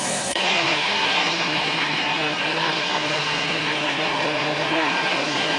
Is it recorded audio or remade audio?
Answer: remade